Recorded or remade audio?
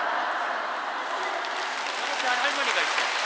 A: recorded